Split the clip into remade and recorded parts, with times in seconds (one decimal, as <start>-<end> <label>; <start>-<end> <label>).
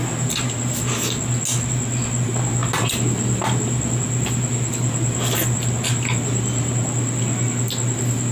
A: 0.0-8.3 recorded